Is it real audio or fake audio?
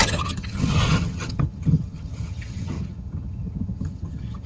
fake